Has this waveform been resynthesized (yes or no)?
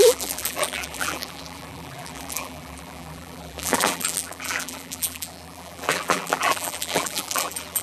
yes